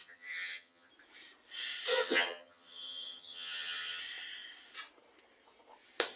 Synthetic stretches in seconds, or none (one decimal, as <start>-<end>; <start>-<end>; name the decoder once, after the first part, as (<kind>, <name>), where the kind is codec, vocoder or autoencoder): 0.0-0.9 (vocoder, HiFi-GAN); 1.9-4.0